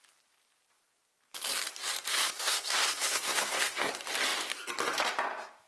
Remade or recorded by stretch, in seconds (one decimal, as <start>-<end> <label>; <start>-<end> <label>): 0.0-2.1 recorded; 2.1-3.9 remade; 3.9-5.7 recorded

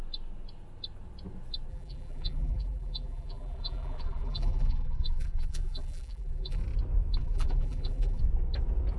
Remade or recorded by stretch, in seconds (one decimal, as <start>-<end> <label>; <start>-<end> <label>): 0.0-1.7 recorded; 1.7-6.6 remade; 6.6-7.2 recorded; 7.2-8.2 remade; 8.2-9.0 recorded

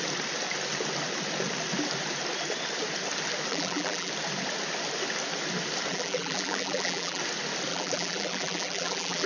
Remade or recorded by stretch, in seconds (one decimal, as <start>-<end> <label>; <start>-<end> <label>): 0.0-3.5 recorded; 3.5-4.1 remade; 4.1-5.9 recorded; 5.9-7.2 remade; 7.2-7.7 recorded; 7.7-9.3 remade

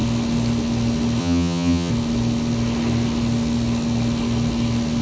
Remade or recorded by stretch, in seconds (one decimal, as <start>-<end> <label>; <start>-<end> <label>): 0.0-1.2 recorded; 1.2-1.9 remade; 1.9-5.0 recorded

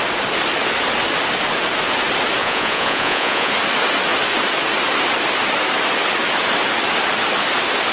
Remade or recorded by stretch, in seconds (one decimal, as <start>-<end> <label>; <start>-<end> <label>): 0.0-2.4 recorded; 2.4-3.5 remade; 3.5-7.9 recorded

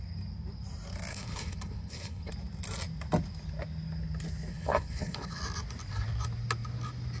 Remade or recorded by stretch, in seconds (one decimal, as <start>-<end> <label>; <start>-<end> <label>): 0.0-1.1 recorded; 1.1-2.3 remade; 2.3-4.5 recorded; 4.5-5.4 remade; 5.4-7.2 recorded

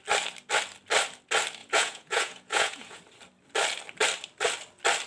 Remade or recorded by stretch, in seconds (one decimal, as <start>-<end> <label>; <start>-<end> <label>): 0.0-1.6 recorded; 1.6-3.0 remade; 3.0-5.1 recorded

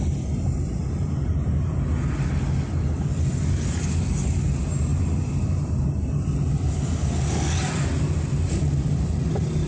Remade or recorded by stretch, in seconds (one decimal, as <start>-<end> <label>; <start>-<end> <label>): 0.0-9.7 recorded